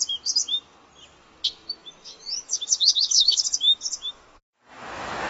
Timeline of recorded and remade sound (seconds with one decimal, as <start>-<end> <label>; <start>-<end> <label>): 0.0-1.8 recorded; 1.8-5.3 remade